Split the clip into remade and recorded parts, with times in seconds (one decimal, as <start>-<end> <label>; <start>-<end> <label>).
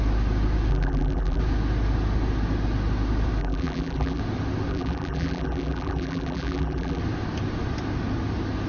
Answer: 0.0-0.7 recorded; 0.7-1.4 remade; 1.4-3.4 recorded; 3.4-4.2 remade; 4.2-4.7 recorded; 4.7-7.0 remade; 7.0-8.7 recorded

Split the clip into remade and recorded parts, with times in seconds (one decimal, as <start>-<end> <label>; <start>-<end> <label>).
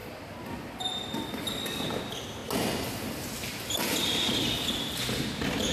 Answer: 0.0-5.7 recorded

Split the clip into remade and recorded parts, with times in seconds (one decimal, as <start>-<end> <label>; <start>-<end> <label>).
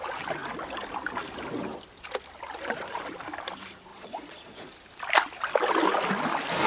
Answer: 0.0-3.9 recorded; 3.9-4.7 remade; 4.7-6.7 recorded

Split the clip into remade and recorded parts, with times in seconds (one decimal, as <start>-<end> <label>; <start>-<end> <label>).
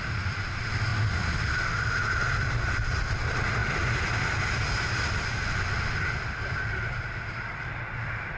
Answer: 0.0-0.9 remade; 0.9-1.6 recorded; 1.6-3.6 remade; 3.6-4.9 recorded; 4.9-8.4 remade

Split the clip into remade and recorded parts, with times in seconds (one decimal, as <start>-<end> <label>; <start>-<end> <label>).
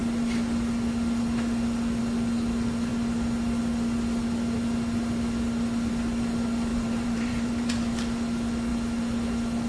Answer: 0.0-6.7 recorded; 6.7-7.7 remade; 7.7-9.7 recorded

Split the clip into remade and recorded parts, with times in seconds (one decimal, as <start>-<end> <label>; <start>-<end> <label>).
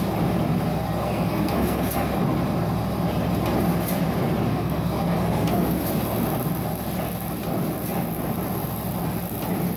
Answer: 0.0-1.0 recorded; 1.0-2.1 remade; 2.1-4.5 recorded; 4.5-5.8 remade; 5.8-9.8 recorded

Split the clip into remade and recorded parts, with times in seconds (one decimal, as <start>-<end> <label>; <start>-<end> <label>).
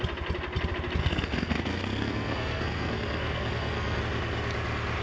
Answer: 0.0-1.0 recorded; 1.0-4.0 remade; 4.0-5.0 recorded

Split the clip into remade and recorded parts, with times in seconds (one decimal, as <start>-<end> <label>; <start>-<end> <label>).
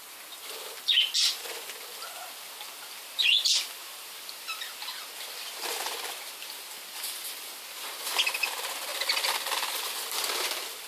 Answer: 0.0-10.9 recorded